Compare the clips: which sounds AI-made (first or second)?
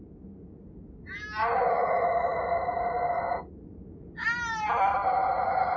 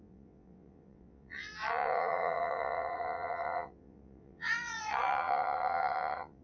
second